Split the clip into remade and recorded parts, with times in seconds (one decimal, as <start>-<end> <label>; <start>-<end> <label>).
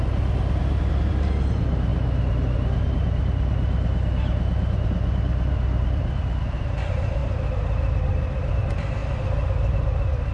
0.0-10.3 recorded